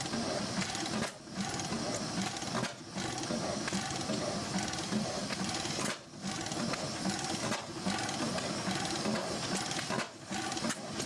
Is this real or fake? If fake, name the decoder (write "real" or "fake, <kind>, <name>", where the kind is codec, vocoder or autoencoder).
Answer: real